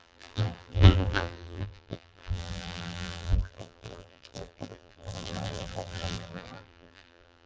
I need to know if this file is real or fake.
fake